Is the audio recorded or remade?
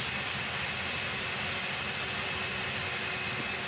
recorded